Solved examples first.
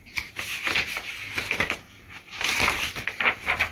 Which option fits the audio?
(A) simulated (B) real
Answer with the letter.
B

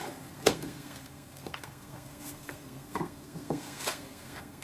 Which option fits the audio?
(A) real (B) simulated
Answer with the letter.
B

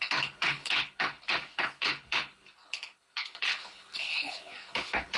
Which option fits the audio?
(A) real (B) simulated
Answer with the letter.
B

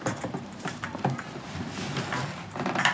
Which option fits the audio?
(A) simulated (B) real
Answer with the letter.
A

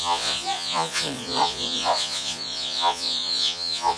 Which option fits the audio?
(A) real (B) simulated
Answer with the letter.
B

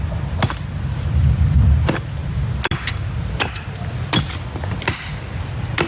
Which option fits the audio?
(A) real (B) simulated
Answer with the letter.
A